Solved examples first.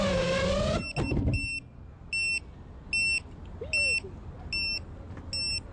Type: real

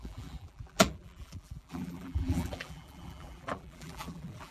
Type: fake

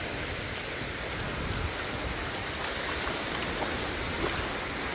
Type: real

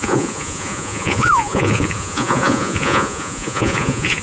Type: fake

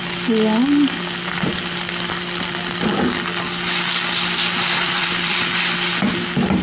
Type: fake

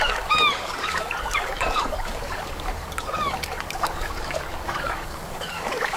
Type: fake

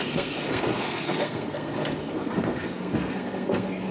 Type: fake